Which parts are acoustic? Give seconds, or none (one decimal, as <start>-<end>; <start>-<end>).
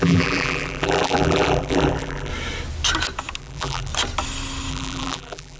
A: 2.3-3.4; 3.9-4.7